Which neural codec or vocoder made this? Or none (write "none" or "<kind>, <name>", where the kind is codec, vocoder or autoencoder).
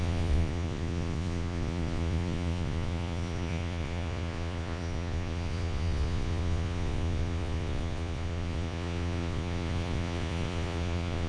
vocoder, Vocos